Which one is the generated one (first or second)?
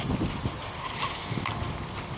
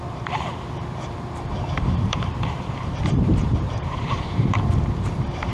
second